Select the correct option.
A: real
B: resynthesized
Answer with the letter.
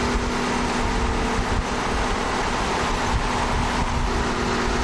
A